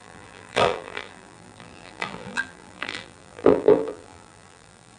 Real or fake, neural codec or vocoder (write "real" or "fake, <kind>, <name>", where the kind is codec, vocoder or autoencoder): fake, vocoder, BigVGAN v2